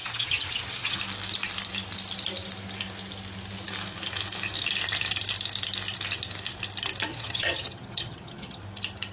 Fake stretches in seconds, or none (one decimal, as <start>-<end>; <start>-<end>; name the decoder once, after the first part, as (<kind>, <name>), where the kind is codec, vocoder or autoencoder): 0.0-1.0 (vocoder, HiFi-GAN); 7.1-8.6